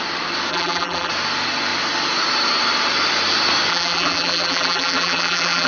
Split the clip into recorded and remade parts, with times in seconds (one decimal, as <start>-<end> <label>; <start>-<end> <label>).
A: 0.0-0.5 recorded; 0.5-1.1 remade; 1.1-3.7 recorded; 3.7-5.7 remade